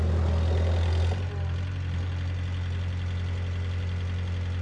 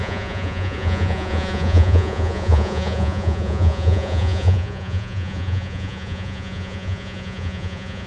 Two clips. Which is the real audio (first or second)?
first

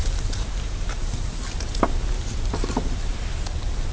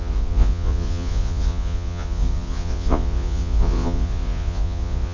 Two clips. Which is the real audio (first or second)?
first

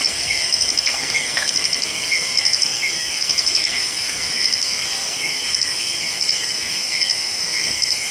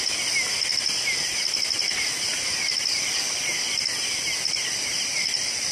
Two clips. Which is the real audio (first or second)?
second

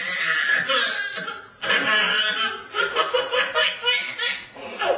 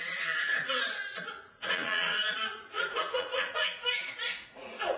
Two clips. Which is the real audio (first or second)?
first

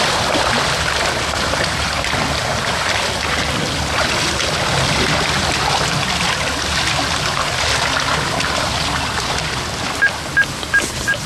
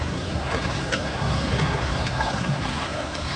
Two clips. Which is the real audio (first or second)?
first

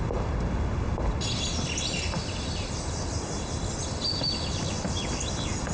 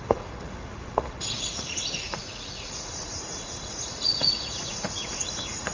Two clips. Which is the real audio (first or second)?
first